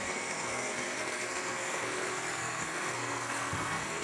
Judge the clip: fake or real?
fake